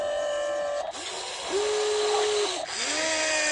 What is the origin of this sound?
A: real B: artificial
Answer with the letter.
A